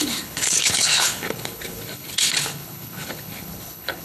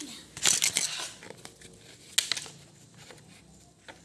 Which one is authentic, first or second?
second